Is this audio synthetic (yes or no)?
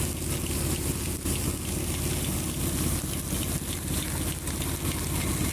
no